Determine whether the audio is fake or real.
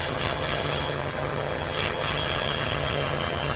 fake